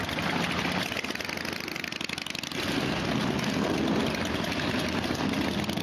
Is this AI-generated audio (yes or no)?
no